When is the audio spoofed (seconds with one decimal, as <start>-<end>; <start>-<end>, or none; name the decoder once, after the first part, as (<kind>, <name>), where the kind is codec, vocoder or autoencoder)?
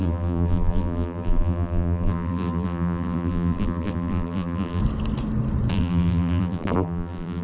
0.0-4.8 (vocoder, BigVGAN v2); 5.7-7.4